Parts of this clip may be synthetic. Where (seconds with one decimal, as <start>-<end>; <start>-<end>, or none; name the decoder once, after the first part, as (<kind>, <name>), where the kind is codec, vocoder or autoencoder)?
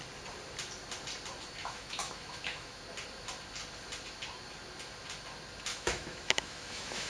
1.6-2.8 (autoencoder, DAC-VAE); 5.7-7.1